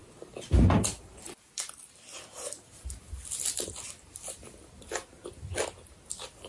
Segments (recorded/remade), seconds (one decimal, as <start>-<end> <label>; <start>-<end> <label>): 0.0-6.5 recorded

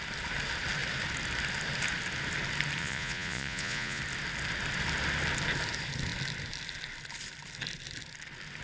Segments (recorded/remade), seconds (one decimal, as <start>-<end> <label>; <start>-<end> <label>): 0.0-2.8 recorded; 2.8-4.0 remade; 4.0-8.6 recorded